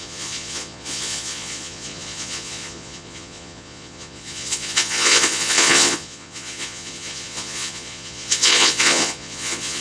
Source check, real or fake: fake